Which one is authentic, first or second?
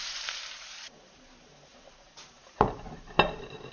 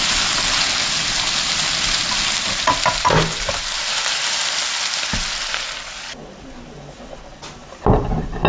second